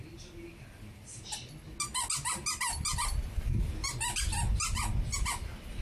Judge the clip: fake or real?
real